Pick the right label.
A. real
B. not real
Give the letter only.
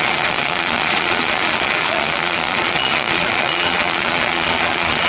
B